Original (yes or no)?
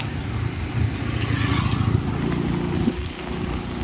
yes